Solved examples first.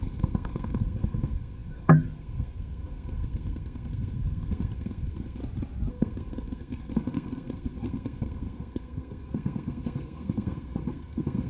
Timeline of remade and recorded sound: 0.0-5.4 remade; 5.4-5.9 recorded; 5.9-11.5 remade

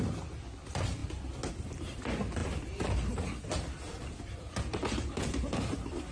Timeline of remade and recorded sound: 0.0-6.1 recorded

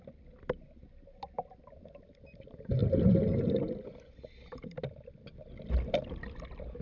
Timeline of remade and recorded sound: 0.0-6.8 recorded

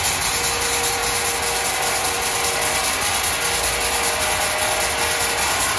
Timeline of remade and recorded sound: 0.0-5.8 recorded

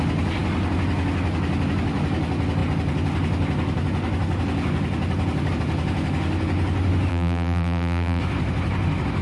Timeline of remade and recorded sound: 0.0-7.1 recorded; 7.1-8.2 remade; 8.2-9.2 recorded